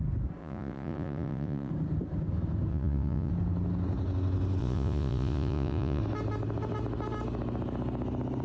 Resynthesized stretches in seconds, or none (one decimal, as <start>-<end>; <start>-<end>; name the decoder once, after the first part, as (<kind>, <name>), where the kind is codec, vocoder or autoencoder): 0.4-1.7 (vocoder, Vocos); 2.7-3.3; 4.6-6.0